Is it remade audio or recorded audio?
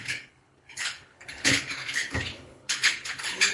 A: remade